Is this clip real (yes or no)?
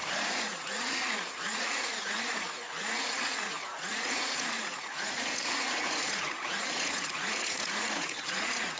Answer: no